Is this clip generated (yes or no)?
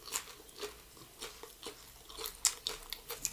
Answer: no